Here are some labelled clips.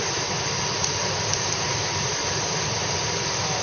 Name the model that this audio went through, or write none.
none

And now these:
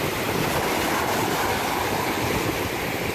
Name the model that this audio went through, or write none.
none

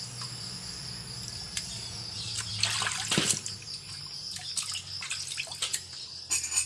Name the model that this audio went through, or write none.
none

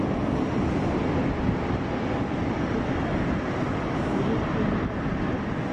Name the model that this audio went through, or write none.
none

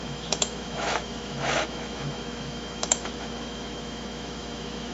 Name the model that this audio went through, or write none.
autoencoder, DAC-VAE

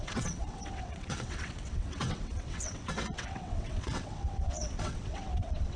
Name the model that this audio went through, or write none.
vocoder, WaveNeXt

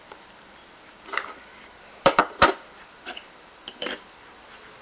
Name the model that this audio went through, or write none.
vocoder, BigVGAN v2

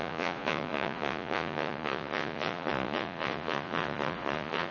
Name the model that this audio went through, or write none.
vocoder, Vocos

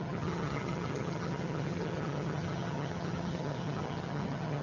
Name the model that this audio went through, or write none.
vocoder, HiFi-GAN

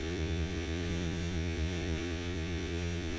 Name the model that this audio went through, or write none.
vocoder, Vocos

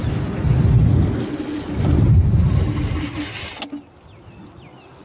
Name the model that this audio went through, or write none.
none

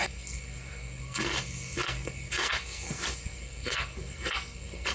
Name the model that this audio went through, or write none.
codec, SNAC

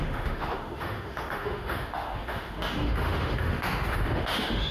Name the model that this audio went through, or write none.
autoencoder, DAC-VAE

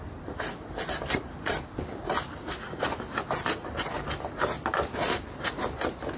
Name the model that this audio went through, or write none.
none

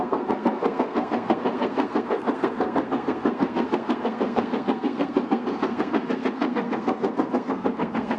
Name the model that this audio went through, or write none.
codec, SNAC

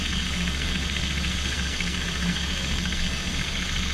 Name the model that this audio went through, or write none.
codec, SNAC